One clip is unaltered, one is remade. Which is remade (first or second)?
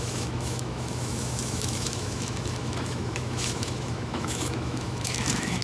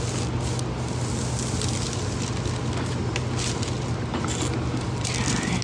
first